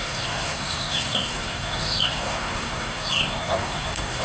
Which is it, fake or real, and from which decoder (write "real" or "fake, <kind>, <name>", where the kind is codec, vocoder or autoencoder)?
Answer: fake, codec, SNAC